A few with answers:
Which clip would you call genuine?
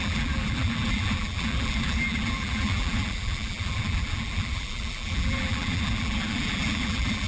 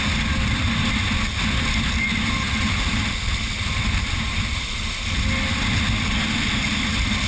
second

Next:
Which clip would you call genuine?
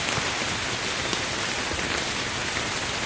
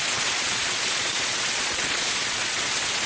first